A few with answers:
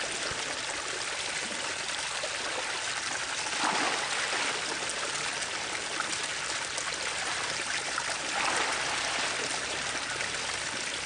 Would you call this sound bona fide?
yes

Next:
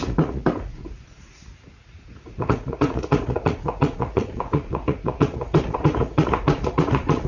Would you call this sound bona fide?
no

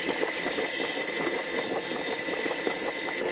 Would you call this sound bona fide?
yes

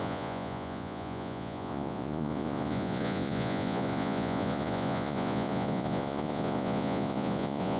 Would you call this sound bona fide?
no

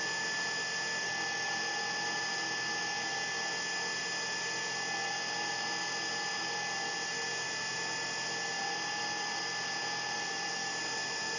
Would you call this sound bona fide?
yes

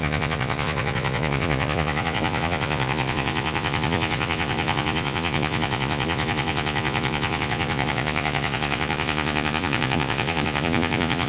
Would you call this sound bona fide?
no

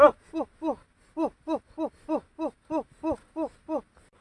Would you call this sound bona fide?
yes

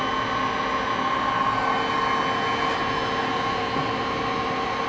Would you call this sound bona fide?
yes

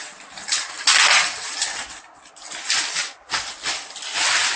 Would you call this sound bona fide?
yes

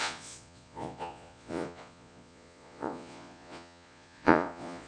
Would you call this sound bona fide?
no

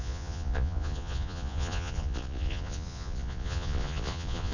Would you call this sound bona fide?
no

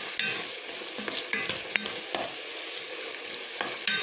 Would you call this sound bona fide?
yes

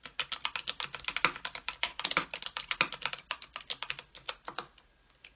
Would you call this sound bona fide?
yes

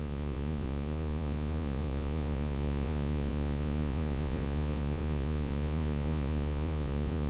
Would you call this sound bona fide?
no